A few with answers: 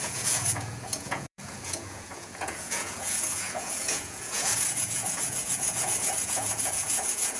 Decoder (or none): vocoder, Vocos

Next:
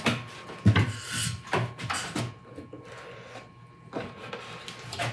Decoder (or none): none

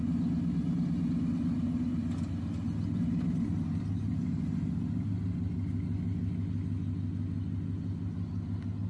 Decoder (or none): none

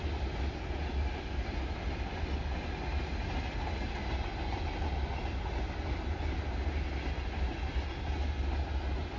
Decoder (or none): none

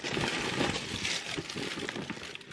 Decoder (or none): none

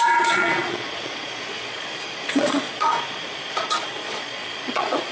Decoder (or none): vocoder, Vocos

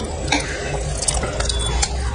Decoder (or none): none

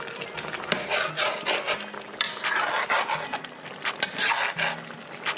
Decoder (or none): none